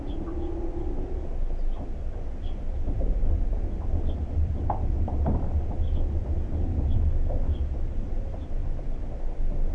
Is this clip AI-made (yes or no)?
no